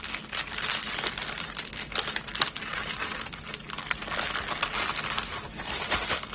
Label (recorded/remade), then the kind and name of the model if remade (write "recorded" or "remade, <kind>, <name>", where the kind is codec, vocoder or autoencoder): recorded